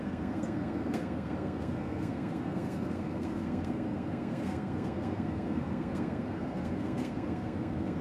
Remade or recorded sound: remade